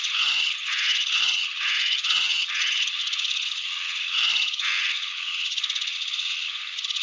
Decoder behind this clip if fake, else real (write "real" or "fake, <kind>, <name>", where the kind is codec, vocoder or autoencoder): fake, vocoder, HiFi-GAN